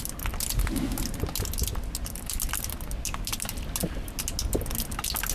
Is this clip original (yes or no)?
yes